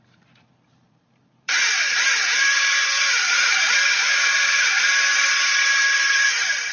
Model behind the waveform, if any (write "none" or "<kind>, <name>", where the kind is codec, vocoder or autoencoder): vocoder, BigVGAN v2